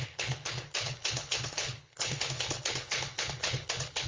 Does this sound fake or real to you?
fake